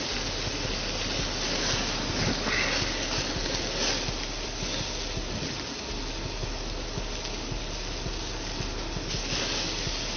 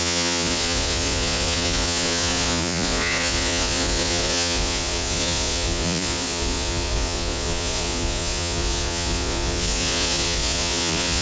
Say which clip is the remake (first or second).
second